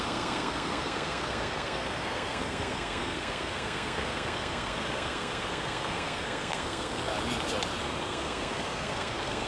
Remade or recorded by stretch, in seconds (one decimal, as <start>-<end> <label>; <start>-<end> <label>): 0.0-7.1 remade; 7.1-7.8 recorded; 7.8-9.5 remade